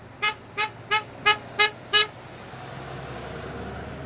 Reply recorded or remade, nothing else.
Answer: recorded